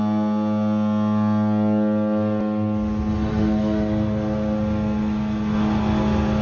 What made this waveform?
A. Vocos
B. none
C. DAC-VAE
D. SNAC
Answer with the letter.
B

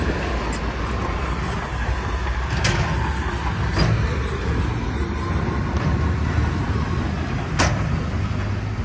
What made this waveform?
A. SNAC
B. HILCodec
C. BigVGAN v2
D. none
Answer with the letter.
D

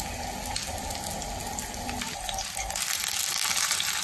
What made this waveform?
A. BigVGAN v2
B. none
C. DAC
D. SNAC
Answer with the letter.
B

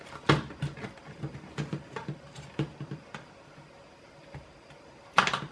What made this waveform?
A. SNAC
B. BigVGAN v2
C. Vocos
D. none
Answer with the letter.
D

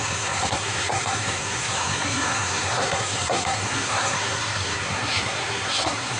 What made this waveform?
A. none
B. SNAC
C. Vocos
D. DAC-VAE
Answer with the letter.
B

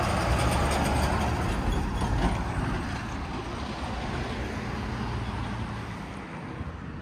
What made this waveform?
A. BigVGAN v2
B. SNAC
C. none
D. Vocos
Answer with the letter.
C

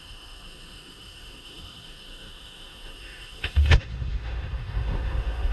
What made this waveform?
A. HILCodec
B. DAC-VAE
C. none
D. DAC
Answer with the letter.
B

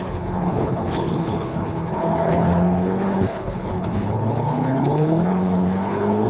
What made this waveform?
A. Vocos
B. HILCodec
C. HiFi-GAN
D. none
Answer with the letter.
B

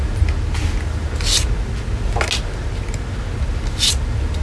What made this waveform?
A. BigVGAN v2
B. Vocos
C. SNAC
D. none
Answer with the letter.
D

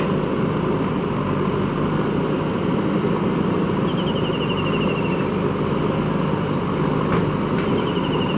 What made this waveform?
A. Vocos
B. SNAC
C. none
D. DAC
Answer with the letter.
C